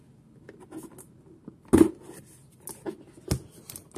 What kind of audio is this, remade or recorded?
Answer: recorded